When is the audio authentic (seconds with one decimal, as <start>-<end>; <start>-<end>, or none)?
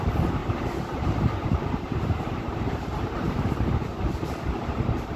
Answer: 0.0-0.4; 3.5-5.2